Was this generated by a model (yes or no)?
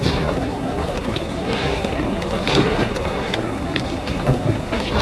yes